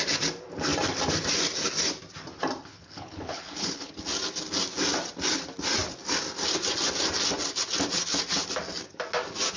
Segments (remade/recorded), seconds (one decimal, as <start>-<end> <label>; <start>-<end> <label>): 0.0-2.7 recorded; 2.7-3.9 remade; 3.9-9.6 recorded